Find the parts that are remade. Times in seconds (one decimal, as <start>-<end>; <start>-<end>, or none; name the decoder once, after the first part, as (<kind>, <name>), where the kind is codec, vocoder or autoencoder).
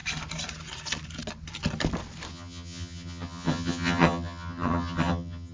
2.3-5.5 (vocoder, HiFi-GAN)